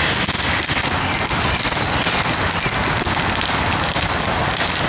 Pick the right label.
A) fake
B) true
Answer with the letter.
B